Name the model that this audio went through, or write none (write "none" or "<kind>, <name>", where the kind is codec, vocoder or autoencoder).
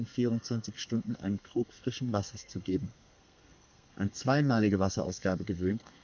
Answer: codec, SNAC